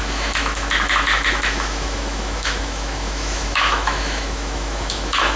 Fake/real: fake